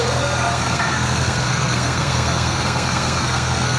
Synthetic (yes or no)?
yes